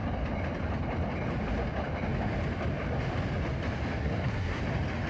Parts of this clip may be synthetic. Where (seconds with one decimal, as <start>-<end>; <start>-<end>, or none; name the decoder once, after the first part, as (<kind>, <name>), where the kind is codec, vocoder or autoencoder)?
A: 4.0-4.6 (codec, SNAC)